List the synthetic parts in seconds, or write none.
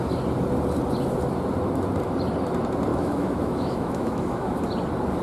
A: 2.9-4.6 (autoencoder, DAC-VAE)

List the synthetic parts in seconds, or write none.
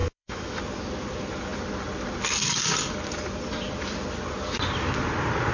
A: 0.0-0.6 (autoencoder, DAC-VAE)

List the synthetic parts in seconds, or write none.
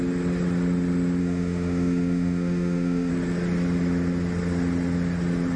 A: 1.2-3.1 (autoencoder, DAC-VAE)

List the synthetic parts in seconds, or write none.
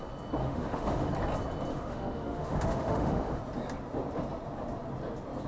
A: 0.4-1.1 (autoencoder, DAC-VAE); 1.7-3.4